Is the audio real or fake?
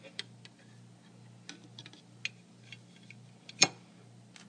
real